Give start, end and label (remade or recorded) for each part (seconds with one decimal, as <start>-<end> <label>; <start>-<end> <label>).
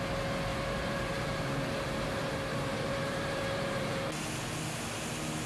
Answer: 0.0-0.5 recorded; 0.5-1.4 remade; 1.4-2.2 recorded; 2.2-4.0 remade; 4.0-5.5 recorded